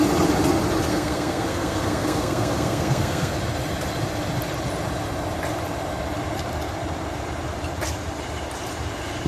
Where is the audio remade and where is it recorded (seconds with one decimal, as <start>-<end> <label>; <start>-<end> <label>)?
0.0-0.9 recorded; 0.9-3.3 remade; 3.3-9.3 recorded

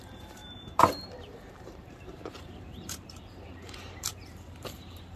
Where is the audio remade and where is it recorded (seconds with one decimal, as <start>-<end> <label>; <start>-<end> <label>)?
0.0-5.2 remade

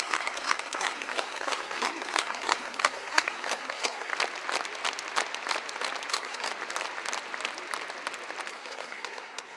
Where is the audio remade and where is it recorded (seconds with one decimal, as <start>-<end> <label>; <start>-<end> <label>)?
0.0-4.1 remade; 4.1-6.1 recorded; 6.1-6.5 remade; 6.5-8.5 recorded; 8.5-9.6 remade